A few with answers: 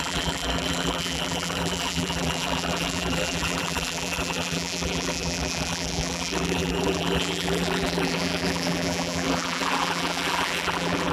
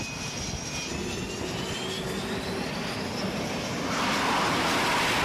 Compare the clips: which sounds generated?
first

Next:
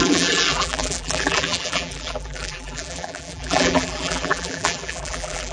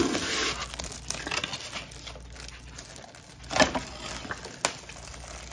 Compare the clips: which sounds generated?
first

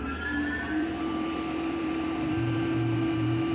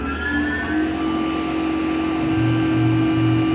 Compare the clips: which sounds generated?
first